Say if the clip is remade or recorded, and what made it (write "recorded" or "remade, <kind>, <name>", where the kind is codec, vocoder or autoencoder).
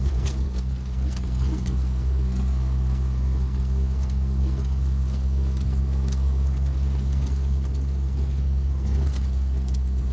remade, codec, SNAC